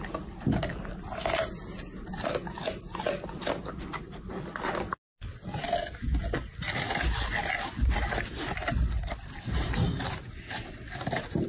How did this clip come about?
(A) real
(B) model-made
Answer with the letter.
A